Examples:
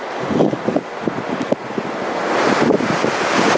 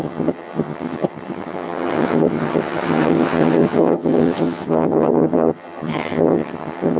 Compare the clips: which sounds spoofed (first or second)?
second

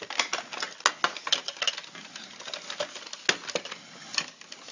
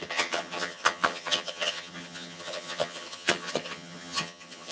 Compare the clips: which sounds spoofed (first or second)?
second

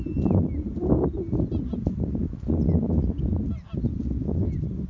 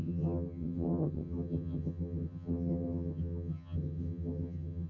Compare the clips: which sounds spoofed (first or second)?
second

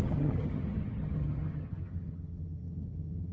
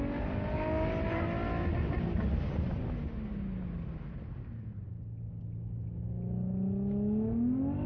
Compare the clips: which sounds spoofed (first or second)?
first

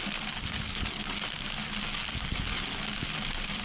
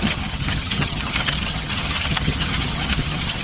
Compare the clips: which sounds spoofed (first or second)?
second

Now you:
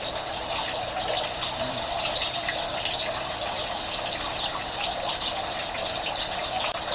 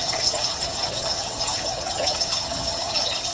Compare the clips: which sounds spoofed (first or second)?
second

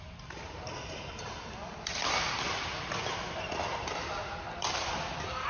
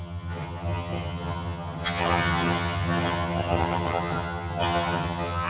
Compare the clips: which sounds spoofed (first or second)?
second